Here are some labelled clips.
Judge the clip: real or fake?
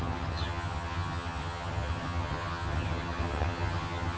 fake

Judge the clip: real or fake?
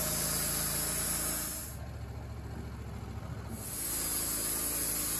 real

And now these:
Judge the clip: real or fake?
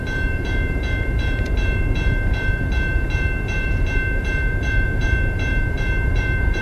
fake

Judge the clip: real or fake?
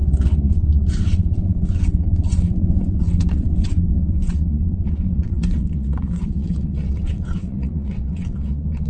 fake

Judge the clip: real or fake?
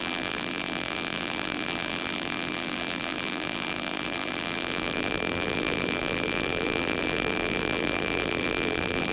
fake